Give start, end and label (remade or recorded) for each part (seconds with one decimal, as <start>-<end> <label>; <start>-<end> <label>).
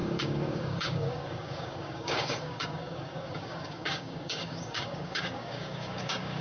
0.0-6.4 remade